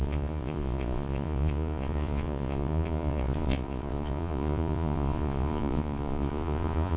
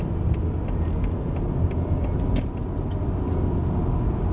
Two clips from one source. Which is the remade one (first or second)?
first